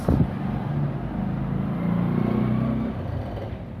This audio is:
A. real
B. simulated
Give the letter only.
A